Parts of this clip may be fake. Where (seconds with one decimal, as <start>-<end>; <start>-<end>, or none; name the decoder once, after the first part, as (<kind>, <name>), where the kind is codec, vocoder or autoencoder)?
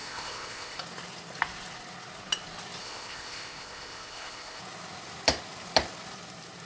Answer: 0.0-0.8 (codec, ZipCodec); 2.8-4.6